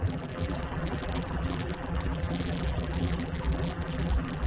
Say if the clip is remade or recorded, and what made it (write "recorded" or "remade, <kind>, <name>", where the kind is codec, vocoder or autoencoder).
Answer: remade, vocoder, BigVGAN v2